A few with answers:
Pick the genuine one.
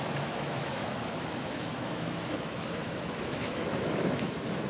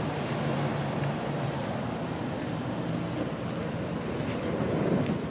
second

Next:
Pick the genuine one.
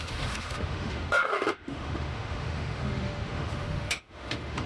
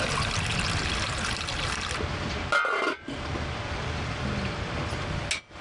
second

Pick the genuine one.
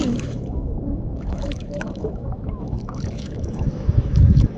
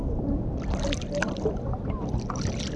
second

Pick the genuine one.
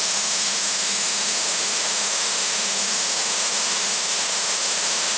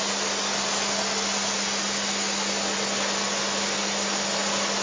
second